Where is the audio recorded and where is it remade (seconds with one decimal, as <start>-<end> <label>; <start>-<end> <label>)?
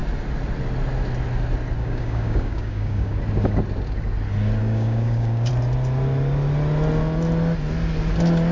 0.0-1.8 recorded; 1.8-3.2 remade; 3.2-4.6 recorded; 4.6-5.5 remade; 5.5-8.5 recorded